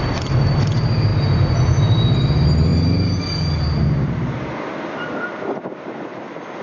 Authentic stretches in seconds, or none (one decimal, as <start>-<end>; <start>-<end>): 0.0-6.6